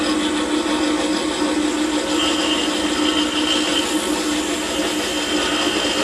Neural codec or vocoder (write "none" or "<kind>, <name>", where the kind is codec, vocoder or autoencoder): none